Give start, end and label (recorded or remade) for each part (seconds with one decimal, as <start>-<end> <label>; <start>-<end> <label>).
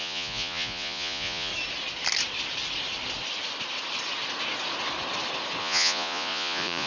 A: 0.0-1.5 remade; 1.5-5.6 recorded; 5.6-6.9 remade